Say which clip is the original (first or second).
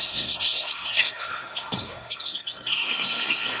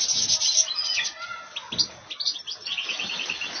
second